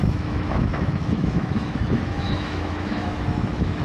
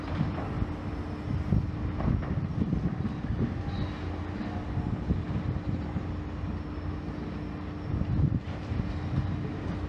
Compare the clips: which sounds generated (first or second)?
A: first